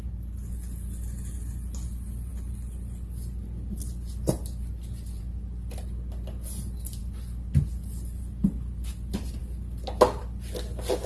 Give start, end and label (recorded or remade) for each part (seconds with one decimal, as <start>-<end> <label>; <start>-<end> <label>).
0.0-11.1 recorded